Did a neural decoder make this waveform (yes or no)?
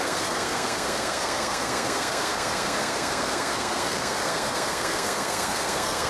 yes